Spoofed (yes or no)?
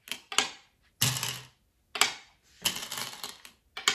no